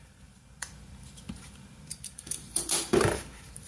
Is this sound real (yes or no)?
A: no